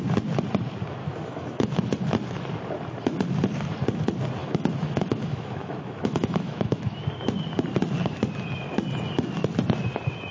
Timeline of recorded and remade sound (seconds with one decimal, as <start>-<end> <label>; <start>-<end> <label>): 0.0-1.0 recorded; 1.0-1.7 remade; 1.7-4.4 recorded; 4.4-7.0 remade; 7.0-10.3 recorded